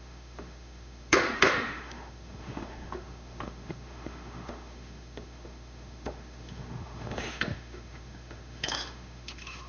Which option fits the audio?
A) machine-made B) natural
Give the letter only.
A